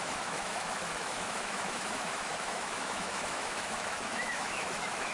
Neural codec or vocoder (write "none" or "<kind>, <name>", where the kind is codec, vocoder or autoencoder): autoencoder, DAC-VAE